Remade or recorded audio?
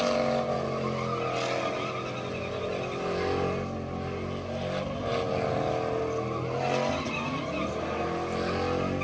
recorded